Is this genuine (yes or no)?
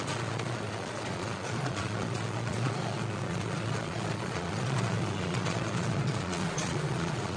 no